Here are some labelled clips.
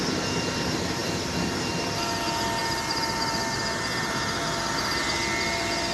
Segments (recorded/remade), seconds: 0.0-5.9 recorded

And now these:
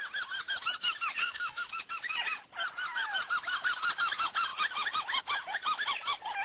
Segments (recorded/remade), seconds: 0.0-1.2 recorded; 1.2-1.7 remade; 1.7-6.4 recorded